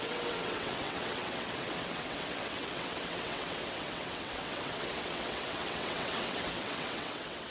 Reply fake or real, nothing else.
fake